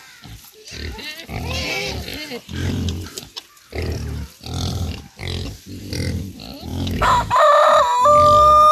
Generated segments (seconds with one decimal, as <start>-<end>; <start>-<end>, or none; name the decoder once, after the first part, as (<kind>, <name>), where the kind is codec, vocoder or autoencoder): 6.7-7.3 (autoencoder, DAC-VAE)